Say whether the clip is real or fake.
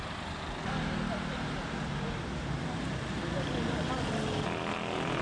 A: real